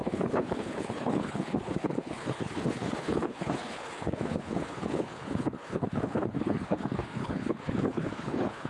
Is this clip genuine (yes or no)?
no